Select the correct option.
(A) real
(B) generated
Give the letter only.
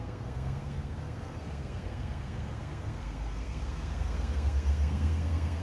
B